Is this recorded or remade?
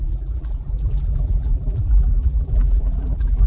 remade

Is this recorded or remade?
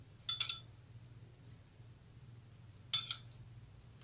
recorded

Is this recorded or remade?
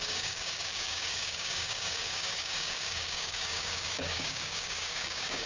remade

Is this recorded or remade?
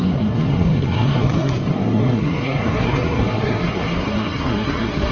remade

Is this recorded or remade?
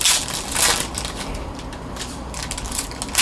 recorded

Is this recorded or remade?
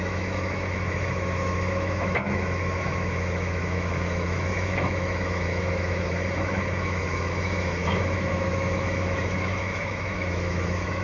remade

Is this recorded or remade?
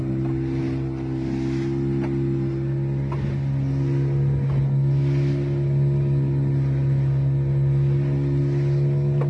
recorded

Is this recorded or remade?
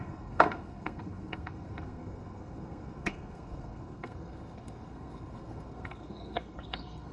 remade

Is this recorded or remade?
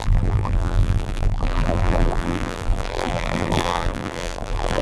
remade